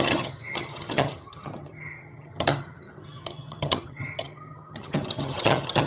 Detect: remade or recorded remade